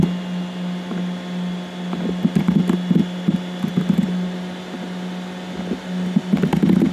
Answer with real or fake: real